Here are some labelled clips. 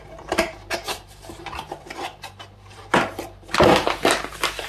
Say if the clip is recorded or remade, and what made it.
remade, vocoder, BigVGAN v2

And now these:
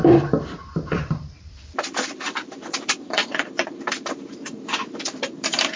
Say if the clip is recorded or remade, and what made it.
remade, vocoder, BigVGAN v2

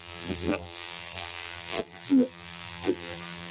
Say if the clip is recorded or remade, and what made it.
remade, vocoder, BigVGAN v2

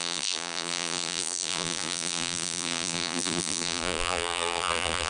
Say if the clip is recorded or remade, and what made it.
remade, vocoder, BigVGAN v2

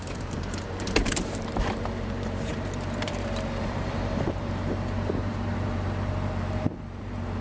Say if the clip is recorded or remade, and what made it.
remade, vocoder, BigVGAN v2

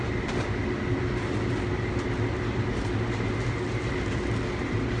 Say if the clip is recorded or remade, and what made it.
recorded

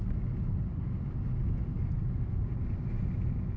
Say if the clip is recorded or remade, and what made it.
recorded